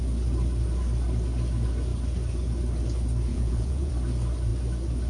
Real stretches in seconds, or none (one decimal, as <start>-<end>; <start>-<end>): 0.0-3.3; 3.9-5.1